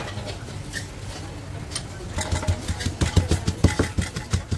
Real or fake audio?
real